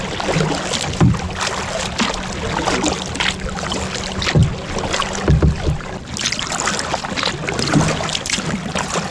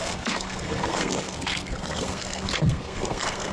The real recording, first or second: first